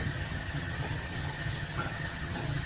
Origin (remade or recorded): remade